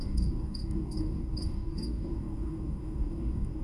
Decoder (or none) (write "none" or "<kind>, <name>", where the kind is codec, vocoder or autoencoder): codec, DAC